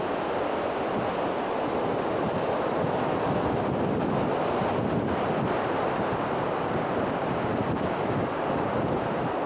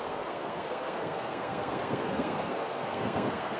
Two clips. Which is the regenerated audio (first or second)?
second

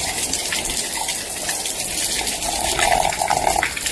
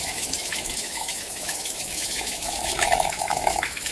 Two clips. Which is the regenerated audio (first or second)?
second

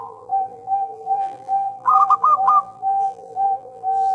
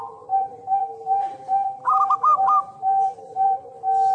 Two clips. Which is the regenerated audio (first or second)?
first